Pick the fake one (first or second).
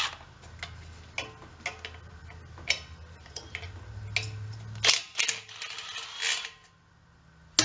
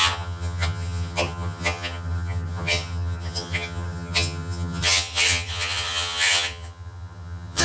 second